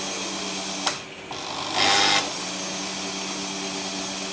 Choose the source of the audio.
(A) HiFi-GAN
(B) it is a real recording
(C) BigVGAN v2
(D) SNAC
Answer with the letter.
B